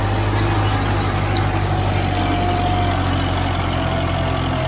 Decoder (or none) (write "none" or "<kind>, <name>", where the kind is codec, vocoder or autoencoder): none